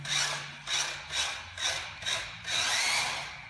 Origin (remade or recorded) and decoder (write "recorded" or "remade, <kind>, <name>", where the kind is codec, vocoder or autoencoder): recorded